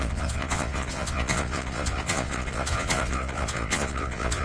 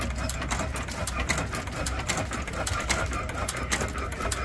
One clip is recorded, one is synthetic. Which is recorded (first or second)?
second